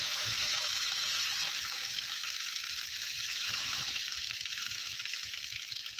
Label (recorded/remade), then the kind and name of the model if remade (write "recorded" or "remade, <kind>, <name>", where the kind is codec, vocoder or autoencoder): remade, autoencoder, DAC-VAE